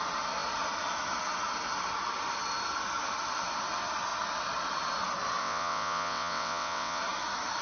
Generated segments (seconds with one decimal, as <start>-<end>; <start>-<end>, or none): 5.4-7.0